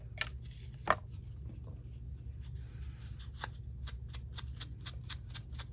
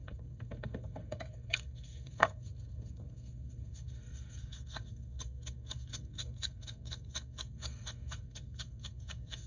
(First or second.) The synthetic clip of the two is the second